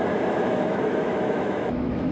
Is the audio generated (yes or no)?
yes